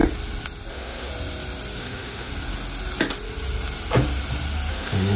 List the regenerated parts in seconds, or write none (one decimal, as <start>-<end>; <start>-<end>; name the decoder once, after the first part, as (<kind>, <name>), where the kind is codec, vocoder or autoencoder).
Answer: 0.7-1.1 (autoencoder, DAC-VAE); 1.8-2.3; 4.7-5.2